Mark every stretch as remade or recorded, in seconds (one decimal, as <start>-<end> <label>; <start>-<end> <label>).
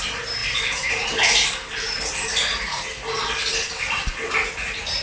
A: 0.0-5.0 recorded